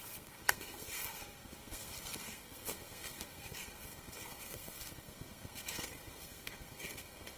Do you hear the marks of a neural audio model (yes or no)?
yes